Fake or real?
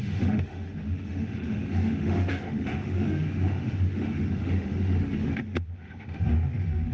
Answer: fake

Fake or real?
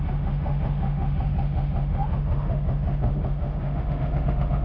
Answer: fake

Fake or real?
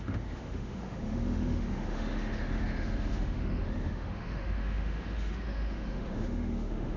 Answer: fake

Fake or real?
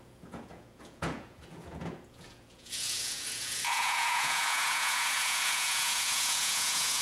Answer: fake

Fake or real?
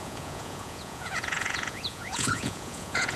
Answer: fake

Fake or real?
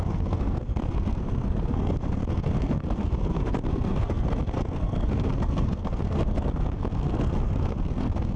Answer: fake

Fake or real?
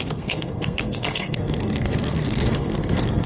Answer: fake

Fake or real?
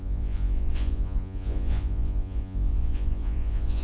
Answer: fake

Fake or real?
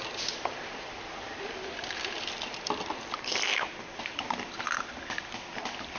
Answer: fake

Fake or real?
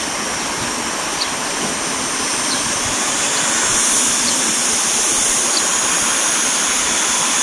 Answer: fake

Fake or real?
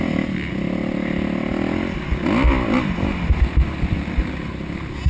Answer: real